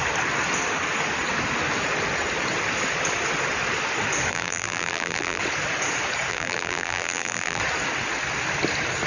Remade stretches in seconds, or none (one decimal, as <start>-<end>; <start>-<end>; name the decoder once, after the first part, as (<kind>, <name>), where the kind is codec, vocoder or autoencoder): 4.3-5.4 (vocoder, BigVGAN v2); 6.3-7.6